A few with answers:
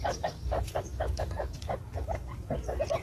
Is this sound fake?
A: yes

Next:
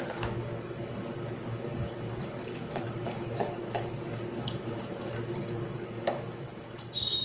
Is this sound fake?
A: yes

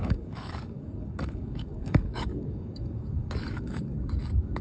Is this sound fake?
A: yes